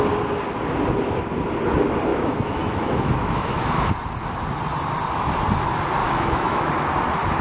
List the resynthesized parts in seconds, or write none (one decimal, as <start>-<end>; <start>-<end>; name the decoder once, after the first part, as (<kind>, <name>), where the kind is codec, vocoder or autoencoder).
2.1-3.9 (autoencoder, DAC-VAE); 6.0-6.7